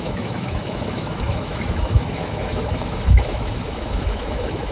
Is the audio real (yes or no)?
no